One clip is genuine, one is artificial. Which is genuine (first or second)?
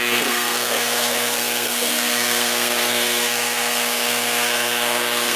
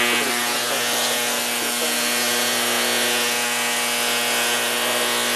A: second